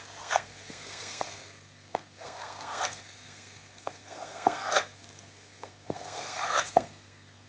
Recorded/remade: remade